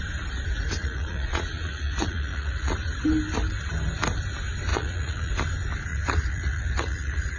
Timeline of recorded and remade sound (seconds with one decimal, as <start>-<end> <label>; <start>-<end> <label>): 0.0-0.8 recorded; 0.8-2.7 remade; 2.7-4.7 recorded; 4.7-5.3 remade; 5.3-5.9 recorded; 5.9-7.4 remade